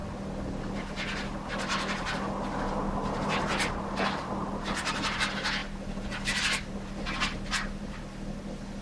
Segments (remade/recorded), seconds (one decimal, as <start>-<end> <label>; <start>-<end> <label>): 0.0-8.8 recorded